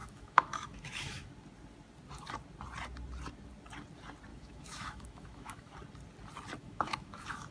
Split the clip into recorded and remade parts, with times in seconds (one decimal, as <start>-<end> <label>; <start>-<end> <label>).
0.0-1.3 remade; 1.3-4.3 recorded; 4.3-5.7 remade; 5.7-6.6 recorded; 6.6-7.5 remade